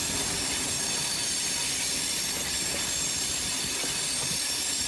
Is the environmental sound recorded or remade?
recorded